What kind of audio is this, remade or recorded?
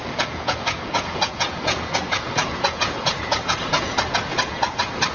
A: remade